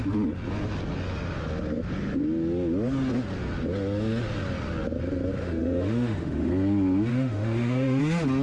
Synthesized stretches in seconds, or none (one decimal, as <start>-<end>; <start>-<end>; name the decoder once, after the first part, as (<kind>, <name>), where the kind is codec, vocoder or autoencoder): 5.4-6.5 (autoencoder, DAC-VAE); 7.1-8.0